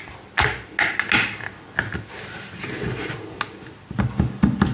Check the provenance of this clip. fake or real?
real